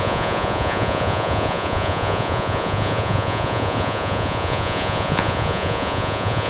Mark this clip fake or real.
fake